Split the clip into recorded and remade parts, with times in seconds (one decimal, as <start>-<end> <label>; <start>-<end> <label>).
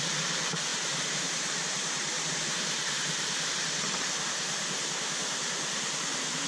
0.0-0.7 recorded; 0.7-3.5 remade; 3.5-6.5 recorded